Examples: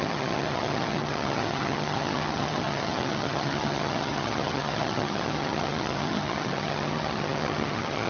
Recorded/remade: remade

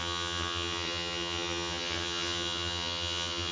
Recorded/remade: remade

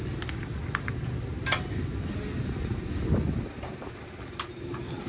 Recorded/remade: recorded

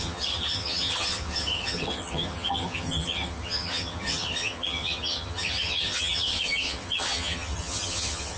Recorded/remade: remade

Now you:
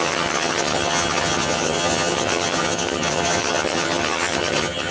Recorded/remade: remade